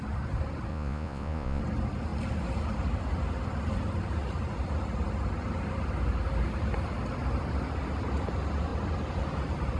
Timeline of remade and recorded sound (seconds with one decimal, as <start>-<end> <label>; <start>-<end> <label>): 0.0-0.7 recorded; 0.7-1.6 remade; 1.6-9.8 recorded